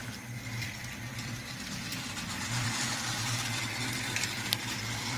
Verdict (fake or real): fake